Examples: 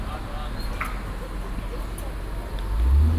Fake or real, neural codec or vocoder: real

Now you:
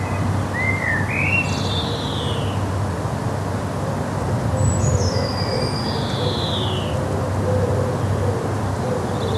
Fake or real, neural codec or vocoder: real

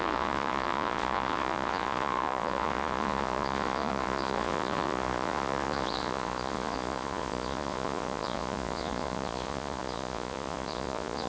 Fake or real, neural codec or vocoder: fake, vocoder, Vocos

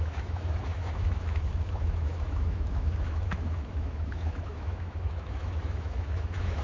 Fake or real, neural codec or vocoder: fake, autoencoder, DAC-VAE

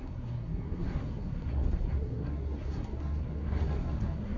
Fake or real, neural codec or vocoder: fake, codec, SNAC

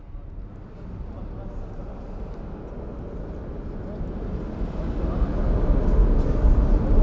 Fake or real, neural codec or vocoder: real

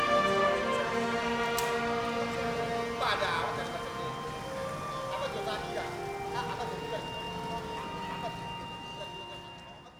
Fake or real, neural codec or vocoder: real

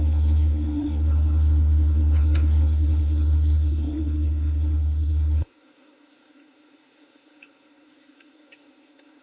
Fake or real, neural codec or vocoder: fake, codec, SNAC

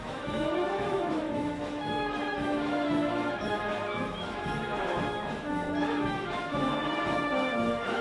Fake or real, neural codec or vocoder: fake, autoencoder, DAC-VAE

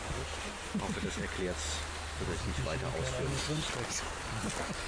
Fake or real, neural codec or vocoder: real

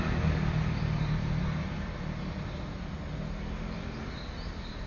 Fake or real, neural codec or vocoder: real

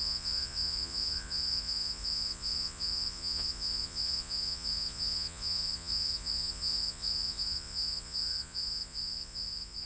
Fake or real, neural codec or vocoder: fake, vocoder, Vocos